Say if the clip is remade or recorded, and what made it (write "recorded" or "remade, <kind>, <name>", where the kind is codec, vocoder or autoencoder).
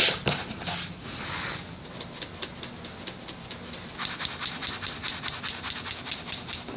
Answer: recorded